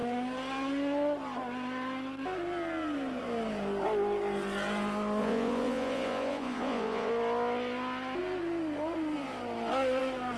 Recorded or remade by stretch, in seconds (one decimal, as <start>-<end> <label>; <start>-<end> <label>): 0.0-5.2 recorded; 5.2-7.1 remade; 7.1-10.4 recorded